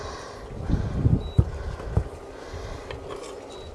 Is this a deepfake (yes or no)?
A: no